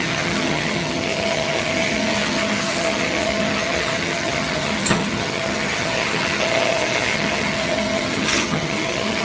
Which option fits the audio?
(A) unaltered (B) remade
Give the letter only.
B